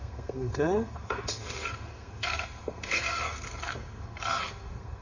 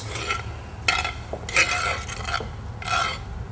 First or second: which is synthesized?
first